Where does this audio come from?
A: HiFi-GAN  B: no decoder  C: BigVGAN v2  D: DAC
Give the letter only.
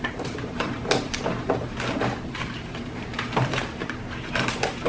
C